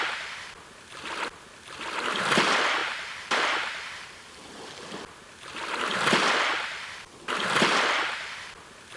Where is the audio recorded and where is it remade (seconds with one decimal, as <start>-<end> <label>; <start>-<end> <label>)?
0.0-2.8 recorded; 2.8-4.7 remade; 4.7-9.0 recorded